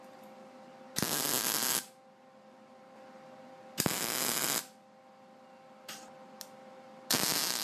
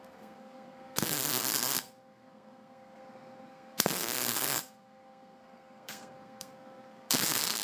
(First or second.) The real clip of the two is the first